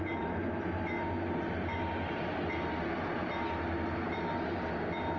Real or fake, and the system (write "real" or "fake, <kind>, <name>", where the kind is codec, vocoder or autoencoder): real